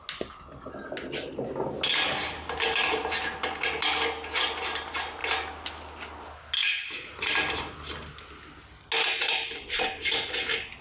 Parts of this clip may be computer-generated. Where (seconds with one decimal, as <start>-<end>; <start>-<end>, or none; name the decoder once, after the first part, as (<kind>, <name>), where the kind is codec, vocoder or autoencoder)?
none